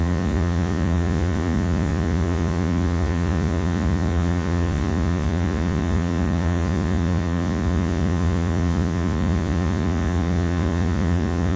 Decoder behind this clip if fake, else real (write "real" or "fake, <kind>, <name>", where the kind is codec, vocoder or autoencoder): fake, vocoder, Vocos